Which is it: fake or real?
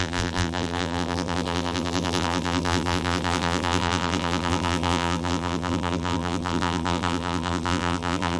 fake